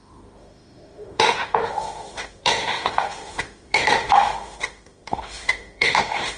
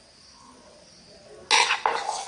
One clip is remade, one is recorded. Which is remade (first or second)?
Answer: first